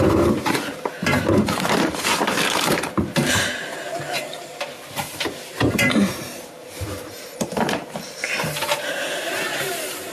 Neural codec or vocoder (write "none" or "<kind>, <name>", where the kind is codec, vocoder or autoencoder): vocoder, BigVGAN v2